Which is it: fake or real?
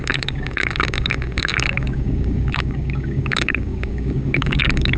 fake